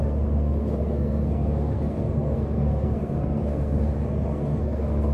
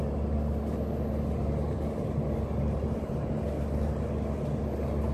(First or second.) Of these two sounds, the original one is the second